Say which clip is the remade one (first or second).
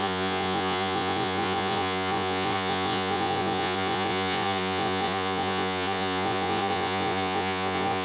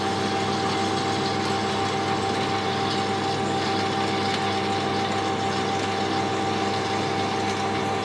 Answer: first